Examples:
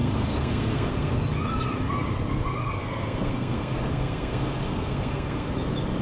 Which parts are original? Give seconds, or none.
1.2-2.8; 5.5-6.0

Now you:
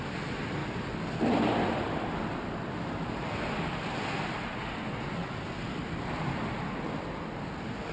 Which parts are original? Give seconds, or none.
0.0-7.9

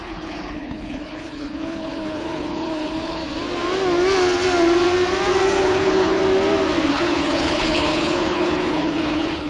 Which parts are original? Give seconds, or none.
3.2-5.6; 6.2-6.9

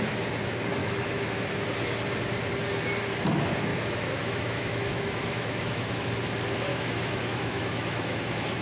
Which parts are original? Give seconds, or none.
0.0-0.8; 1.5-3.7; 6.1-6.7